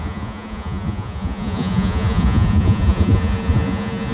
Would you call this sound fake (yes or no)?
yes